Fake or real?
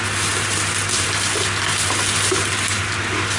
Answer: real